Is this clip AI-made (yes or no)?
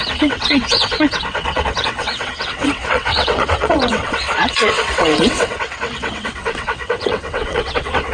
yes